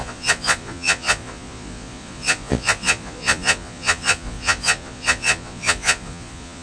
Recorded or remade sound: remade